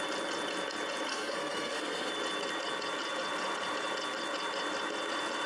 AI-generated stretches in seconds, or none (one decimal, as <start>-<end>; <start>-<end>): 1.1-2.1